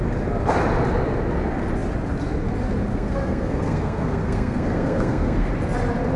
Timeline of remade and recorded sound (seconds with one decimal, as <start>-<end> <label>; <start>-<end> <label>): 0.0-2.9 recorded; 2.9-5.5 remade; 5.5-6.2 recorded

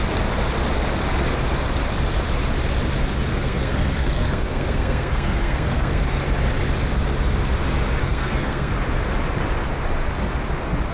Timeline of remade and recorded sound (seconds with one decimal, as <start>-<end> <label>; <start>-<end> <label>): 0.0-3.3 recorded; 3.3-6.0 remade; 6.0-8.0 recorded; 8.0-8.7 remade; 8.7-10.9 recorded

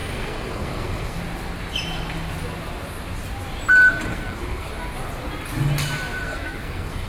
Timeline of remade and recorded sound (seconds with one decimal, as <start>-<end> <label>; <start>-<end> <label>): 0.0-1.2 remade; 1.2-4.1 recorded; 4.1-4.7 remade; 4.7-6.2 recorded; 6.2-7.1 remade

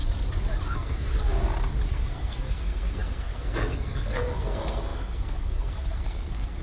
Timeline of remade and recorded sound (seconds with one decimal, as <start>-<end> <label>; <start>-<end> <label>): 0.0-0.7 recorded; 0.7-1.1 remade; 1.1-1.9 recorded; 1.9-6.6 remade